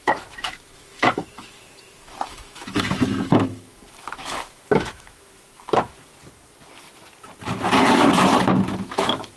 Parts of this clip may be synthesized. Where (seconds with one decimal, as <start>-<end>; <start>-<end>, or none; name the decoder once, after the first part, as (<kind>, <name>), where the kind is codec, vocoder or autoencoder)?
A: 0.0-6.1 (autoencoder, DAC-VAE); 8.8-9.4